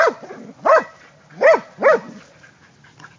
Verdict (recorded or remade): recorded